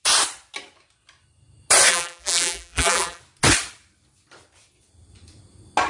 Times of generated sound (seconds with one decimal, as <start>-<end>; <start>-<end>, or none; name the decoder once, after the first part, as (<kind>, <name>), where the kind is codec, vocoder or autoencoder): 1.9-3.2 (vocoder, BigVGAN v2)